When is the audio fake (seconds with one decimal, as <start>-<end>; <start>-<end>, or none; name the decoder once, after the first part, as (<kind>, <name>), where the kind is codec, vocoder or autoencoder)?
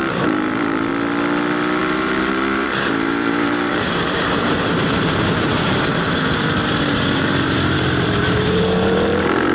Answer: 0.0-0.9 (vocoder, BigVGAN v2); 1.8-9.5